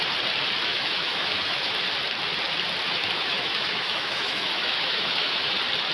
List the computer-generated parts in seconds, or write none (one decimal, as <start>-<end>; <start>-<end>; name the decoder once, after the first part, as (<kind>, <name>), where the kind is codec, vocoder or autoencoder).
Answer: 0.7-1.7 (autoencoder, DAC-VAE); 3.0-5.5